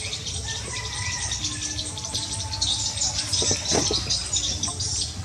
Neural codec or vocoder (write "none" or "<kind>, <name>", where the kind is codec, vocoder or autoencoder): vocoder, BigVGAN v2